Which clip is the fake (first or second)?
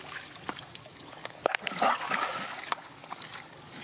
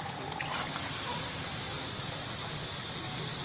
first